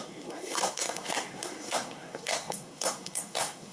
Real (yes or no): no